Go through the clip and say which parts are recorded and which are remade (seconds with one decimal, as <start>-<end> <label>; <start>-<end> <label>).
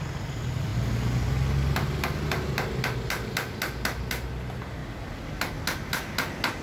0.0-6.6 recorded